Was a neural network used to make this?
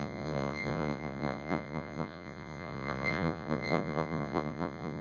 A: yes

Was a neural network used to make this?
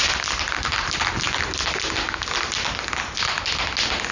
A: no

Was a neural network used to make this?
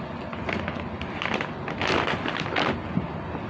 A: no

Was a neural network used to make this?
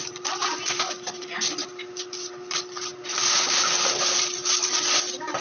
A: no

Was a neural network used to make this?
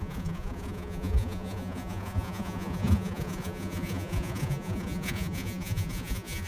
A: yes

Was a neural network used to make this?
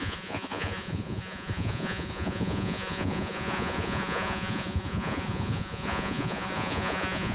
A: yes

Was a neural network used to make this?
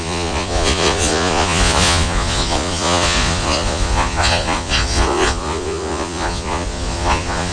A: yes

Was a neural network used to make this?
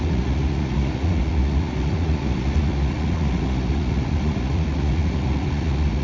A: yes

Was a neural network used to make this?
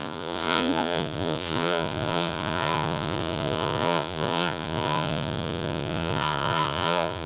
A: yes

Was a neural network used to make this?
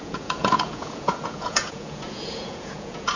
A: yes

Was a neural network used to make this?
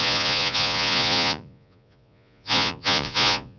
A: yes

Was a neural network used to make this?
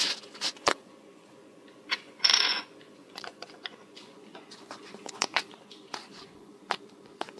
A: yes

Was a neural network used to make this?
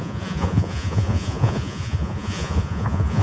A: yes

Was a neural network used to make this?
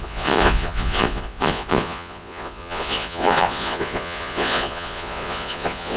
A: yes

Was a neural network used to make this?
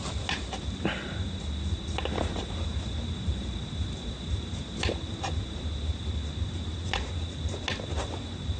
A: no